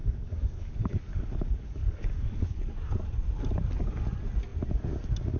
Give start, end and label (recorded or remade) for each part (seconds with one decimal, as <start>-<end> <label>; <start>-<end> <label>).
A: 0.0-2.7 remade; 2.7-5.4 recorded